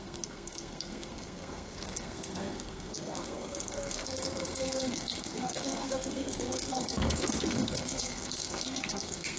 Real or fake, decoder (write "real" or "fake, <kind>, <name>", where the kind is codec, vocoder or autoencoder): fake, codec, SNAC